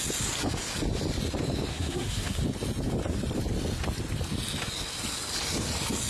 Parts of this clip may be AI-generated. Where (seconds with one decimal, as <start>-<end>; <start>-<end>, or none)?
1.7-2.4